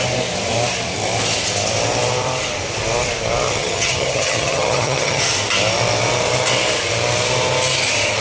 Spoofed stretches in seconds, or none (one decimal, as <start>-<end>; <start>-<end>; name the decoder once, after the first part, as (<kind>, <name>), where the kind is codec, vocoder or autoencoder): 3.6-5.2 (vocoder, HiFi-GAN)